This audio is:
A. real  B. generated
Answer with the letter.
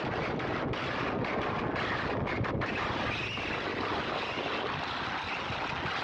A